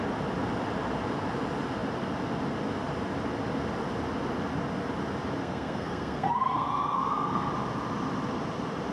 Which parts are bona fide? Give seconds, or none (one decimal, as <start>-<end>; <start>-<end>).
0.0-5.4; 7.5-8.9